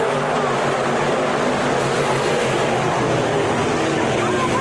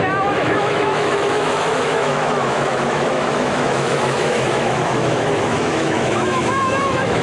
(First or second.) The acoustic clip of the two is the first